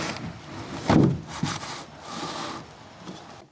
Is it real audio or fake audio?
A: real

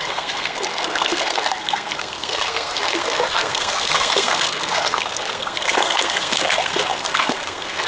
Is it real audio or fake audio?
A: fake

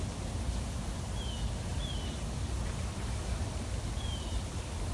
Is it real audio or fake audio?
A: real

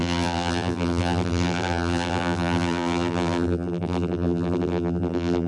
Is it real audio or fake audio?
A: fake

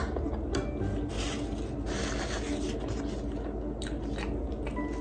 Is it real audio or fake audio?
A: real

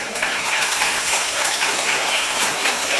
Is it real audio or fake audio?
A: fake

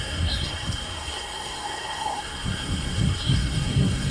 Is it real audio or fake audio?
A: fake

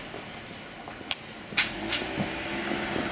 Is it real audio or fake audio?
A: real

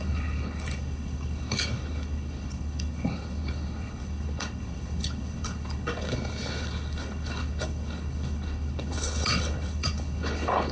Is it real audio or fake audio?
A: fake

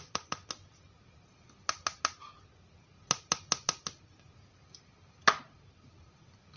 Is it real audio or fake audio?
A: real